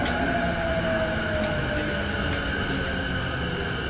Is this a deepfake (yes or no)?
no